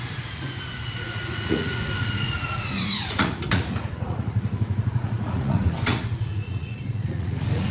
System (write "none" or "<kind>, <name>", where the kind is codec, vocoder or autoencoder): vocoder, Vocos